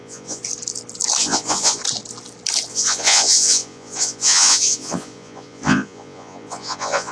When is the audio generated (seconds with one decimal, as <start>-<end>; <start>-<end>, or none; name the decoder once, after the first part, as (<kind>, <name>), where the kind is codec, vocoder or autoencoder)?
0.0-0.4 (vocoder, Vocos); 1.2-1.8; 2.7-7.1